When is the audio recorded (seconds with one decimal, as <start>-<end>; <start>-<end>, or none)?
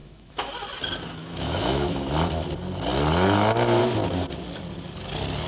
0.5-1.2; 2.1-5.5